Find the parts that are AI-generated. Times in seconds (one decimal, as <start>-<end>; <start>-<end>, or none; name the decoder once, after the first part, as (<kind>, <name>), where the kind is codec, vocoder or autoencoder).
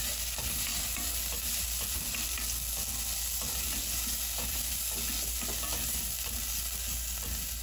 none